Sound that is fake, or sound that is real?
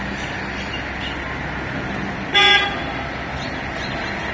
real